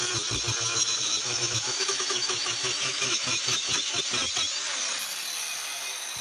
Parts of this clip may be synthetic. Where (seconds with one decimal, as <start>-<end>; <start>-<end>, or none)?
0.7-4.0